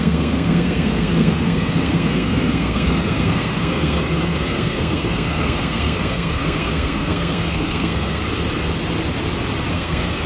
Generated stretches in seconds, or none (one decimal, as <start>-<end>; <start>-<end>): 0.0-8.2; 9.7-10.3